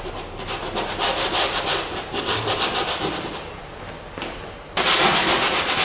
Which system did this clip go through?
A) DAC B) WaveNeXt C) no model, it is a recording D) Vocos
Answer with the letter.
C